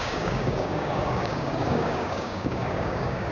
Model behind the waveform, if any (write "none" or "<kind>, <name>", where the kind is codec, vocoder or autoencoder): codec, DAC